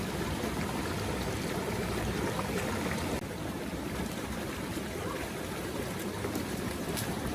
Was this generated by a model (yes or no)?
yes